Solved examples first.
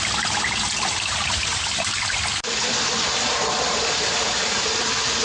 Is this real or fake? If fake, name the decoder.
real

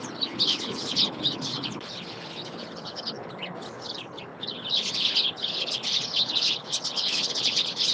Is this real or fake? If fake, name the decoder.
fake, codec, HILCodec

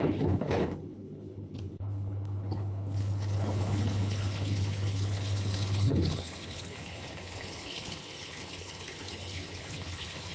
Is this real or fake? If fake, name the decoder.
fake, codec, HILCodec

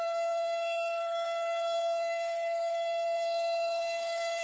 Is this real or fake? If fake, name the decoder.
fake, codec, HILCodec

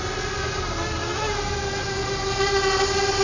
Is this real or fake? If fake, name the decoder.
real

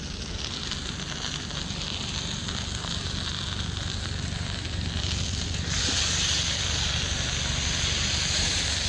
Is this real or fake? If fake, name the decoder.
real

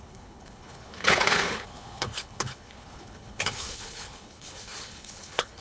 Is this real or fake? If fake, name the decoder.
fake, codec, HILCodec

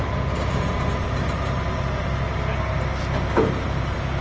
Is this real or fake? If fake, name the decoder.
real